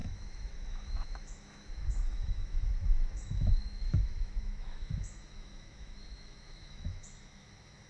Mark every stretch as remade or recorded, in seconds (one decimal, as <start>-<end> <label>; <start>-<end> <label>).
0.0-7.9 remade